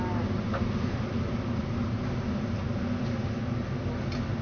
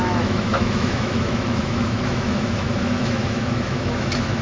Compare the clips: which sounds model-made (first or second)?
second